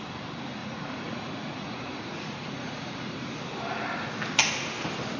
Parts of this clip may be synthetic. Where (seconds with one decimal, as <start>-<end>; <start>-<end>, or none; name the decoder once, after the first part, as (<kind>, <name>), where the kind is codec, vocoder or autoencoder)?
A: 0.6-3.4 (vocoder, Vocos)